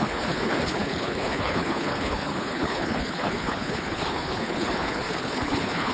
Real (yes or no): no